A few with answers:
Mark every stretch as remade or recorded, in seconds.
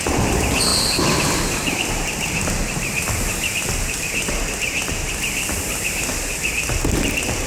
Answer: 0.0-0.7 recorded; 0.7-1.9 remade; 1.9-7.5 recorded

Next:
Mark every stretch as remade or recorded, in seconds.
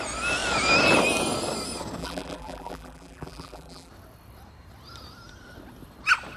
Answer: 0.0-2.0 recorded; 2.0-3.9 remade; 3.9-6.4 recorded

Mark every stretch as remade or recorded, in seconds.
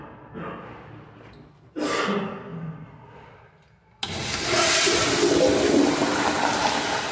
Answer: 0.0-7.1 recorded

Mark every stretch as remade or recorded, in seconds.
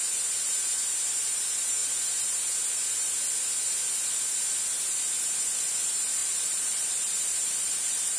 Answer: 0.0-1.4 recorded; 1.4-1.8 remade; 1.8-5.7 recorded; 5.7-8.2 remade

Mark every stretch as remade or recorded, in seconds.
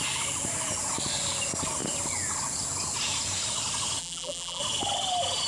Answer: 0.0-4.0 recorded; 4.0-4.6 remade; 4.6-5.5 recorded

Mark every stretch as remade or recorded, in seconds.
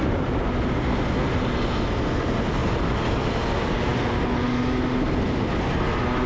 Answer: 0.0-2.6 recorded; 2.6-3.2 remade; 3.2-6.3 recorded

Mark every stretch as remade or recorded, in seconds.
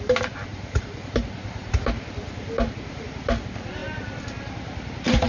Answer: 0.0-0.5 recorded; 0.5-1.1 remade; 1.1-5.3 recorded